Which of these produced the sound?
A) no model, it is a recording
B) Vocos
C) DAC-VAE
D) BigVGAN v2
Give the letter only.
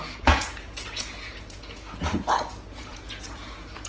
B